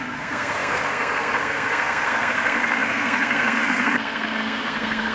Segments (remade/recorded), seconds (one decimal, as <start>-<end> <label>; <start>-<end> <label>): 0.0-5.1 remade